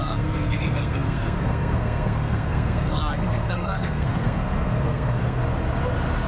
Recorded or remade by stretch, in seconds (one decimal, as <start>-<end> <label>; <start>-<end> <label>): 0.0-5.4 remade; 5.4-6.3 recorded